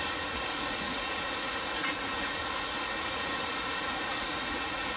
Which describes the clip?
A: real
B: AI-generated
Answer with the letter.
B